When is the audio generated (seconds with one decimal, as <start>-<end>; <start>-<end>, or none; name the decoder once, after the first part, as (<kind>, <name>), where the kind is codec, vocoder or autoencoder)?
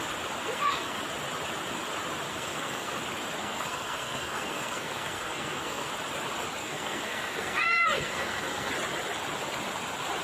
0.4-1.0 (codec, SNAC); 2.3-2.9; 3.4-5.9; 6.6-8.7